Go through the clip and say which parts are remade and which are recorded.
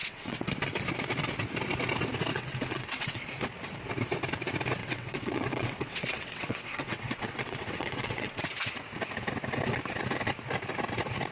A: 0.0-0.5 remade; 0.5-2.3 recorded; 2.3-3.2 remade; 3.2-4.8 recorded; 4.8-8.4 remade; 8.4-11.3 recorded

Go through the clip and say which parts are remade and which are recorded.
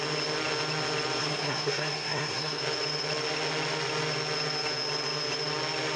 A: 0.0-1.2 recorded; 1.2-2.6 remade; 2.6-6.0 recorded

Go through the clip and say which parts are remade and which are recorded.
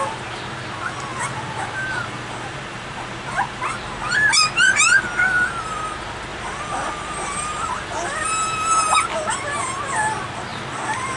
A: 0.0-1.1 recorded; 1.1-3.6 remade; 3.6-6.3 recorded; 6.3-9.0 remade; 9.0-10.5 recorded; 10.5-11.2 remade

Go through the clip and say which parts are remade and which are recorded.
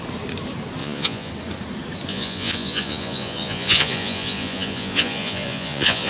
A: 0.0-0.8 recorded; 0.8-1.3 remade; 1.3-2.1 recorded; 2.1-6.1 remade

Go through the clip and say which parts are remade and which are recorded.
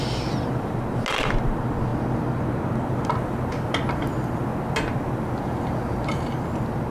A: 0.0-6.9 recorded